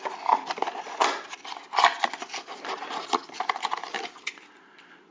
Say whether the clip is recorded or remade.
recorded